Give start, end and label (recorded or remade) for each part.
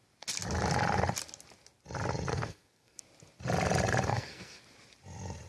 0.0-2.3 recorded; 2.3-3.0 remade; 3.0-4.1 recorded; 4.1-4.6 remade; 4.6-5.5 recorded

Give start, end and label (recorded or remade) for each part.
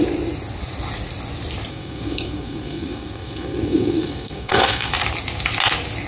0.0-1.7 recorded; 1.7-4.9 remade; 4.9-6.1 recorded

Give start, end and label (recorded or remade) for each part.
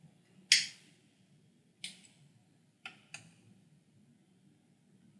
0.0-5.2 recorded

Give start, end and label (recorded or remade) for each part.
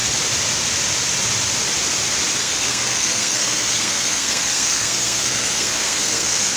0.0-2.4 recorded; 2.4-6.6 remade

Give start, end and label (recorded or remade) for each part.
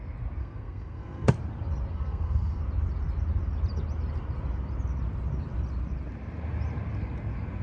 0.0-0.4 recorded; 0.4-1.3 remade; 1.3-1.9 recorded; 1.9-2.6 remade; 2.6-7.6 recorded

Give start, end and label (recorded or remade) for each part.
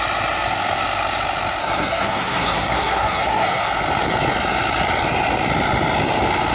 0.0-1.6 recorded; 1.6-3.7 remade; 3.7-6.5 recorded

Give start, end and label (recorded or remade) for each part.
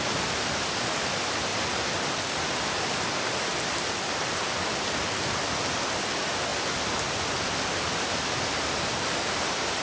0.0-9.8 recorded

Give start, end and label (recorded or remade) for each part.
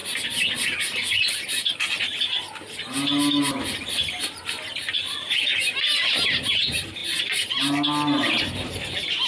0.0-9.3 recorded